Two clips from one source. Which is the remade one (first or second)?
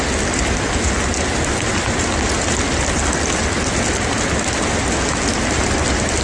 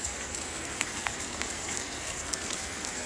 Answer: second